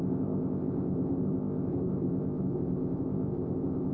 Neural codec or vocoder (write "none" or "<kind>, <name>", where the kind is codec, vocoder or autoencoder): codec, ZipCodec